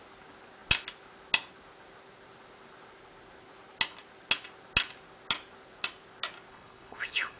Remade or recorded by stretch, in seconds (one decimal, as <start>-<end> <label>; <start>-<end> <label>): 0.0-6.5 recorded; 6.5-7.4 remade